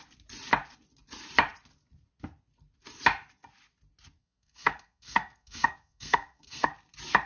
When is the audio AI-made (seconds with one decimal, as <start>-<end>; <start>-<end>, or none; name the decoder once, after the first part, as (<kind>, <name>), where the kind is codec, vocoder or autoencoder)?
4.2-6.7 (codec, SNAC)

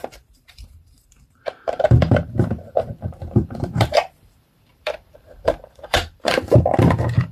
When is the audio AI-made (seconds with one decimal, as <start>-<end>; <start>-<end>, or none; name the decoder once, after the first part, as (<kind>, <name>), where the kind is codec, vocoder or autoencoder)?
0.0-7.3 (vocoder, BigVGAN v2)

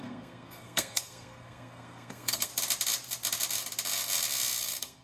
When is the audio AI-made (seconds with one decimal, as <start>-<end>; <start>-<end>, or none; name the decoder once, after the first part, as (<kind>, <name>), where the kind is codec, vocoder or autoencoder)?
0.0-2.5 (codec, SNAC); 4.6-5.0

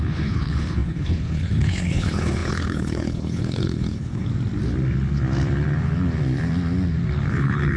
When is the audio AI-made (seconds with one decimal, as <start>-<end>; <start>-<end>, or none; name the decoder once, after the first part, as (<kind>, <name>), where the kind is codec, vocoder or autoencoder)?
0.0-4.3 (codec, HILCodec); 7.3-7.8